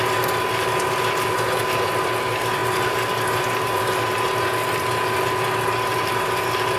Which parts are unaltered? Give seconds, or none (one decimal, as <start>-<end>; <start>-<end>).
0.0-6.8